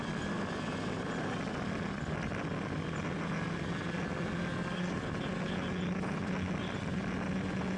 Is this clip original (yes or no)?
yes